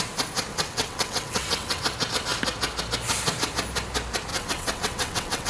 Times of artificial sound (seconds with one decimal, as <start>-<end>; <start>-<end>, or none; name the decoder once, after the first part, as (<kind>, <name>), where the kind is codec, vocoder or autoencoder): 0.5-1.8 (vocoder, WaveNeXt); 4.3-5.5